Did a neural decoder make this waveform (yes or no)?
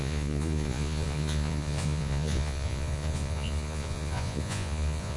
yes